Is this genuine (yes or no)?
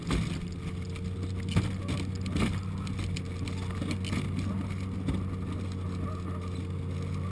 yes